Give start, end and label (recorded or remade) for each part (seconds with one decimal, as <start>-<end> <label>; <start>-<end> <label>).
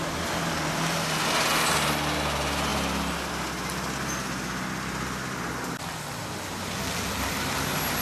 0.0-8.0 recorded